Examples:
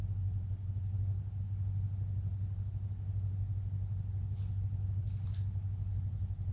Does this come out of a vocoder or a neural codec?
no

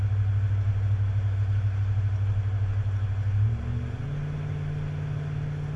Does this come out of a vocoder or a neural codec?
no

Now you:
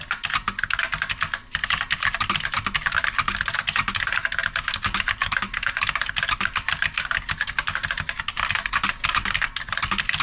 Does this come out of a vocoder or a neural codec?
no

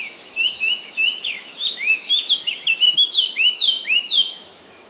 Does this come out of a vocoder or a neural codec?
yes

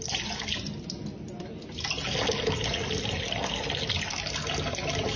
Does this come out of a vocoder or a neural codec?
no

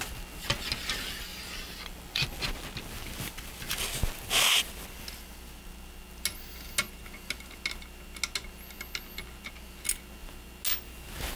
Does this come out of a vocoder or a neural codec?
no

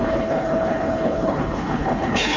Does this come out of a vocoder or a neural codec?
yes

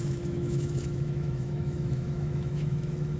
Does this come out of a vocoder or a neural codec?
yes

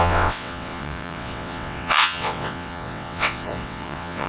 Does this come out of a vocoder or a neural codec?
yes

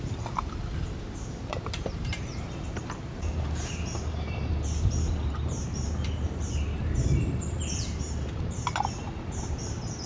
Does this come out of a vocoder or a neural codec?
yes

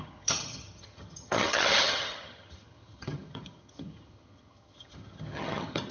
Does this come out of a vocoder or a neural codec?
yes